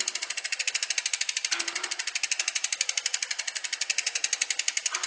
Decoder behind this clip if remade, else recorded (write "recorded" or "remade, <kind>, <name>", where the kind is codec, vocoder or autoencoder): recorded